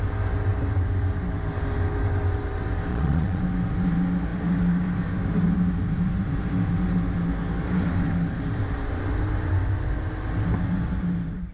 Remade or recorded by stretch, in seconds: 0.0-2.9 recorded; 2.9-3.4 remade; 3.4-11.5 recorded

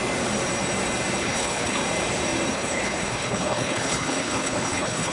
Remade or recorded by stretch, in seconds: 0.0-1.2 recorded; 1.2-1.8 remade; 1.8-2.5 recorded; 2.5-5.1 remade

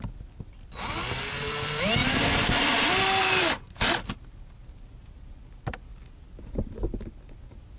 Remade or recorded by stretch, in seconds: 0.0-2.0 recorded; 2.0-2.9 remade; 2.9-7.8 recorded

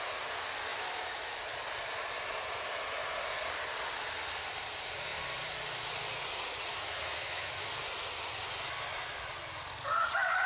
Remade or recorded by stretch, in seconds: 0.0-0.7 recorded; 0.7-1.3 remade; 1.3-6.7 recorded; 6.7-7.7 remade; 7.7-10.5 recorded

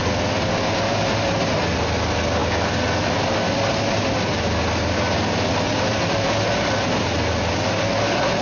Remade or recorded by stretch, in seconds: 0.0-8.4 recorded

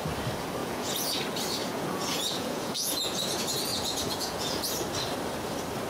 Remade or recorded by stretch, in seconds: 0.0-0.6 recorded; 0.6-1.2 remade; 1.2-1.6 recorded; 1.6-3.2 remade; 3.2-3.7 recorded; 3.7-4.7 remade; 4.7-5.9 recorded